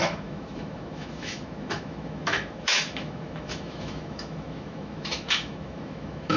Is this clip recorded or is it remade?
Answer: remade